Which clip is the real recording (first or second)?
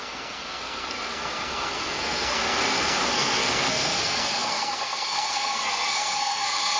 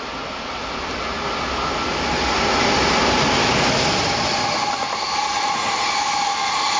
second